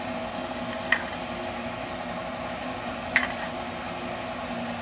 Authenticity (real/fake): real